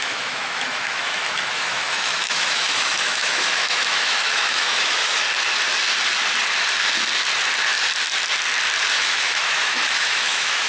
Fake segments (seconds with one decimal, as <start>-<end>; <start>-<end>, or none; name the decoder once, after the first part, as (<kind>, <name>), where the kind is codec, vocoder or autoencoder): 0.0-5.2 (autoencoder, DAC-VAE); 8.9-10.7